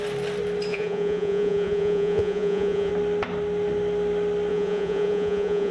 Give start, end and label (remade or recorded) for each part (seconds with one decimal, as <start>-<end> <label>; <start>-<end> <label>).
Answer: 0.0-0.7 recorded; 0.7-2.9 remade; 2.9-4.5 recorded; 4.5-5.7 remade